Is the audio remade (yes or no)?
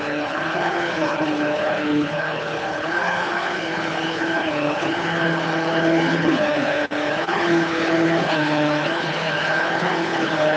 yes